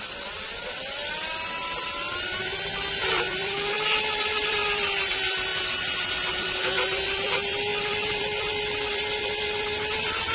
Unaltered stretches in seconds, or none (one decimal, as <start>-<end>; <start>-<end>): 1.0-2.4; 5.5-6.1